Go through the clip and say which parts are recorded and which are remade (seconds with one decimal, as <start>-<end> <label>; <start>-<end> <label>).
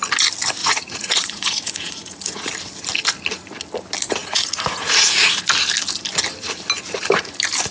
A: 0.0-0.6 recorded; 0.6-2.5 remade; 2.5-4.2 recorded; 4.2-5.4 remade; 5.4-7.7 recorded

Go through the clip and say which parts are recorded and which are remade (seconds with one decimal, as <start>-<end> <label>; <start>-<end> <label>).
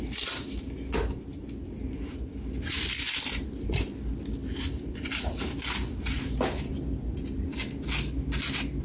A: 0.0-8.8 recorded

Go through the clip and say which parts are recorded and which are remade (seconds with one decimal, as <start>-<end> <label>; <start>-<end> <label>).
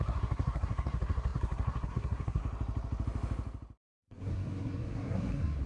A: 0.0-2.4 remade; 2.4-4.1 recorded; 4.1-5.7 remade